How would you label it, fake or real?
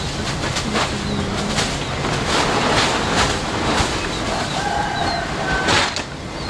real